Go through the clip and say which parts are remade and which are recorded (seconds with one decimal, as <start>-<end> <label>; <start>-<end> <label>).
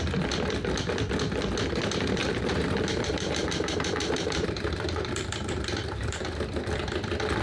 0.0-2.2 recorded; 2.2-6.6 remade; 6.6-7.4 recorded